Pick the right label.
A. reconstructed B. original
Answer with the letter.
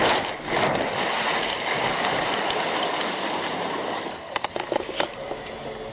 B